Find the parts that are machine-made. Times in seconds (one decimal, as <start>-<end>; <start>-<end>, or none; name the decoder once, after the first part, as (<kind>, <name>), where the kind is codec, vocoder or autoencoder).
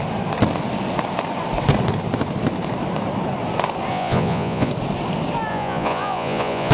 3.9-4.7 (vocoder, Vocos); 5.5-6.7